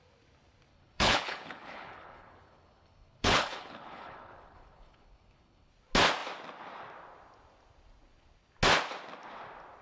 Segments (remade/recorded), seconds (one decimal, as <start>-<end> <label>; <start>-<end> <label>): 0.0-0.7 recorded; 0.7-5.7 remade; 5.7-9.8 recorded